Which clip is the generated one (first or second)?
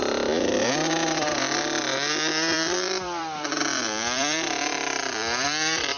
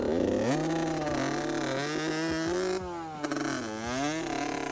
first